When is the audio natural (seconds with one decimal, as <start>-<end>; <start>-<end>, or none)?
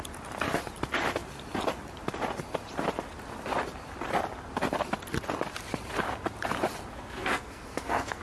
0.0-6.9